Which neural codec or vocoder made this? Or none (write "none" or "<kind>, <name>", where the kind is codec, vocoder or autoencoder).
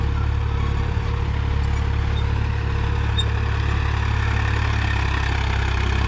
none